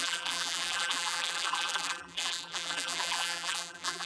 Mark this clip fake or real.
fake